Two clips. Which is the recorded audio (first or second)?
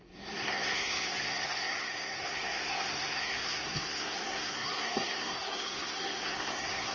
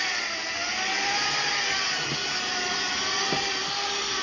second